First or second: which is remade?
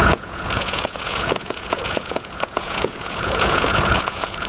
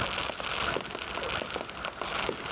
first